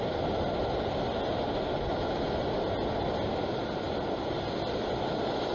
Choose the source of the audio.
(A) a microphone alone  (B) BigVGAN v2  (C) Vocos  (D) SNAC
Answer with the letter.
A